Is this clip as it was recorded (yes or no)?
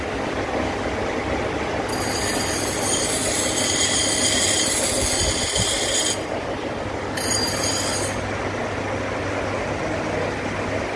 yes